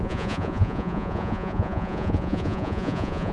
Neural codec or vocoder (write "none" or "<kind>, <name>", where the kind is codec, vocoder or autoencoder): vocoder, Vocos